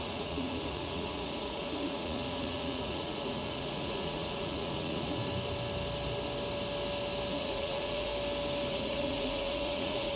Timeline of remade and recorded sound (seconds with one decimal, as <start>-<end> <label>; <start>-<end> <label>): 0.0-5.2 remade; 5.2-7.3 recorded; 7.3-8.1 remade; 8.1-8.7 recorded; 8.7-10.2 remade